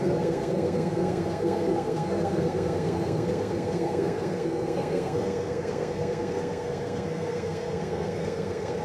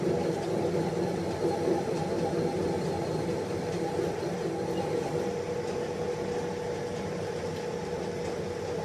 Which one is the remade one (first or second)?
first